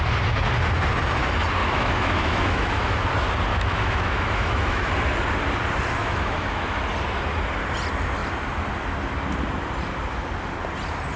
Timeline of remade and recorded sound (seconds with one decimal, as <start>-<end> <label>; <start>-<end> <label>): 0.0-1.6 recorded; 1.6-3.0 remade; 3.0-3.5 recorded; 3.5-4.9 remade; 4.9-6.0 recorded; 6.0-6.8 remade; 6.8-11.2 recorded